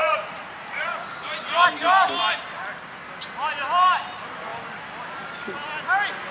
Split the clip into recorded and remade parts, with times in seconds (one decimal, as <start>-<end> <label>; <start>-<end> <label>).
0.0-1.4 remade; 1.4-6.3 recorded